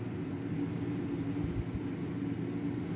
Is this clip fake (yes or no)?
no